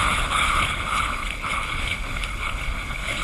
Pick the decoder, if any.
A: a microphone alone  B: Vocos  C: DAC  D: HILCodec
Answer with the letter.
D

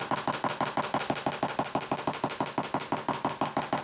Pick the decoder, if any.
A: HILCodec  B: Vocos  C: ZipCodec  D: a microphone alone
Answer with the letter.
D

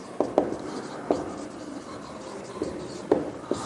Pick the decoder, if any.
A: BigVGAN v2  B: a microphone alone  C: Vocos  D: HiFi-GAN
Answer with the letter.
B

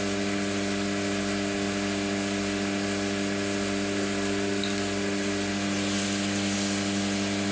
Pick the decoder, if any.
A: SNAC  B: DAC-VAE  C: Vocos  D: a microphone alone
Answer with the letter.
D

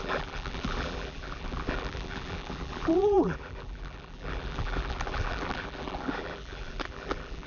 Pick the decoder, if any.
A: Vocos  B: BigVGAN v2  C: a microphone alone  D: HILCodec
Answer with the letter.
B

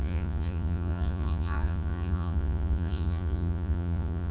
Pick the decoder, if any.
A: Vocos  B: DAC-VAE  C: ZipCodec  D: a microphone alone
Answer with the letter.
A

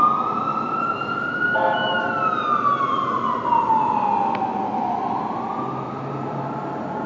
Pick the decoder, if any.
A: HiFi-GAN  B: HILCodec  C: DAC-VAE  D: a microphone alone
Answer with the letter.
D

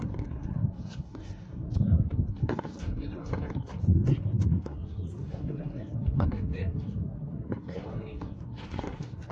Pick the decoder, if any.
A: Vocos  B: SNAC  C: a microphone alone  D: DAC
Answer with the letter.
B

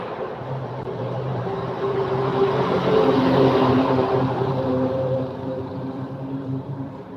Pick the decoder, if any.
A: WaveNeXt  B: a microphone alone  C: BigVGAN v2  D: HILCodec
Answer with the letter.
C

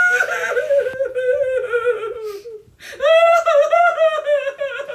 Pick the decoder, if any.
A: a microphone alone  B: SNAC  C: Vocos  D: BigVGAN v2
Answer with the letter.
A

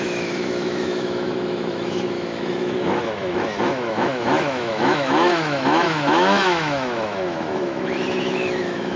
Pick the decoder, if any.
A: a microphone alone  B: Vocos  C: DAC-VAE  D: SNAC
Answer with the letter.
C